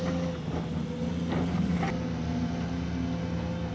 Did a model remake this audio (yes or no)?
no